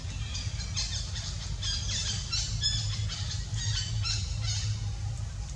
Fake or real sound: real